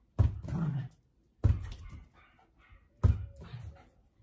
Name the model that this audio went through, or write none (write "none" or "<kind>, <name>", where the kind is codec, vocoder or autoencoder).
none